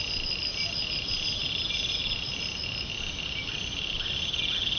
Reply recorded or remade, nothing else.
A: recorded